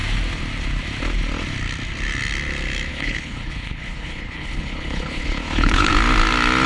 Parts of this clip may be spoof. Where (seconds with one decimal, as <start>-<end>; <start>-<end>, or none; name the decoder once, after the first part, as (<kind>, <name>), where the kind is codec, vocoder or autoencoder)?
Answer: 2.9-5.9 (codec, HILCodec)